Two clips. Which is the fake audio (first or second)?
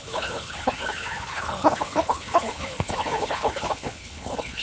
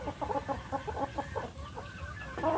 first